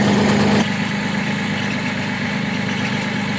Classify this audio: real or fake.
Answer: real